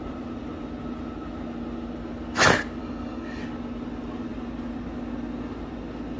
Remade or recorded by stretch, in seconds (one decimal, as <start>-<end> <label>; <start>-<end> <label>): 0.0-2.8 recorded; 2.8-3.4 remade; 3.4-6.2 recorded

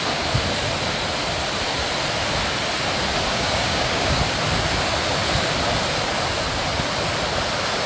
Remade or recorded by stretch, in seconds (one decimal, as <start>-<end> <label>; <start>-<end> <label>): 0.0-3.3 recorded; 3.3-4.2 remade; 4.2-7.9 recorded

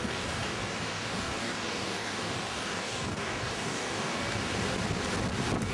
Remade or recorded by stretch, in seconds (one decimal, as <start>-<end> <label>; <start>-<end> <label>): 0.0-4.2 remade; 4.2-5.7 recorded

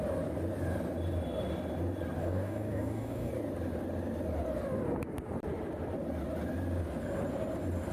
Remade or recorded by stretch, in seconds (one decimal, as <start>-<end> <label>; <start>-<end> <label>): 0.0-2.2 recorded; 2.2-3.3 remade; 3.3-7.9 recorded

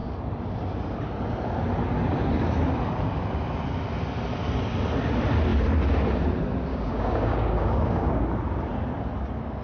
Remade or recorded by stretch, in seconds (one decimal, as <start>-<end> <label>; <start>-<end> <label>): 0.0-6.7 recorded; 6.7-8.2 remade; 8.2-9.6 recorded